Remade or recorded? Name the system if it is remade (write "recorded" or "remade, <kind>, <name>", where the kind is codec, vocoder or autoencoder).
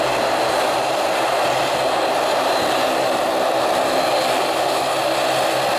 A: recorded